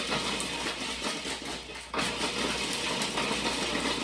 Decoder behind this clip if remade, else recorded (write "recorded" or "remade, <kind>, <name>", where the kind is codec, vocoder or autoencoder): recorded